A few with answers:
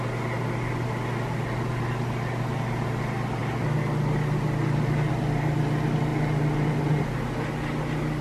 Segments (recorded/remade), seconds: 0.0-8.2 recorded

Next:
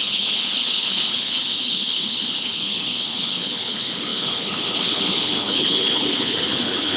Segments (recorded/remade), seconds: 0.0-7.0 remade

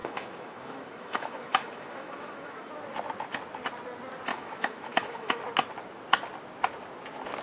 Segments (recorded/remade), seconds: 0.0-2.7 remade; 2.7-4.3 recorded; 4.3-5.4 remade; 5.4-7.4 recorded

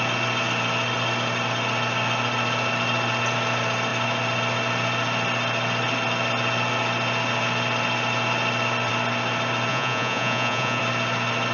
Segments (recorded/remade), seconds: 0.0-9.7 recorded; 9.7-10.8 remade; 10.8-11.5 recorded

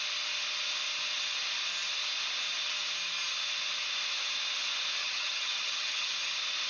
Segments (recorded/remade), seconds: 0.0-5.0 recorded; 5.0-6.1 remade; 6.1-6.7 recorded

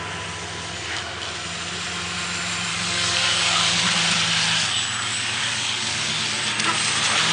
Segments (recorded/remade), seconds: 0.0-2.7 recorded; 2.7-4.0 remade; 4.0-5.1 recorded; 5.1-6.1 remade; 6.1-7.3 recorded

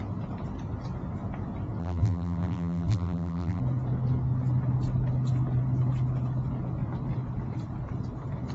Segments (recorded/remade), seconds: 0.0-1.8 recorded; 1.8-3.6 remade; 3.6-8.5 recorded

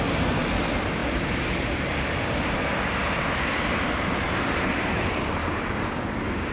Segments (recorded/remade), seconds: 0.0-5.4 recorded; 5.4-6.5 remade